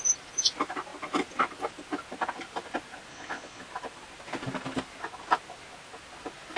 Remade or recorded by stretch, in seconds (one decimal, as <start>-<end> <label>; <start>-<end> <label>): 0.0-3.1 recorded; 3.1-3.6 remade; 3.6-6.6 recorded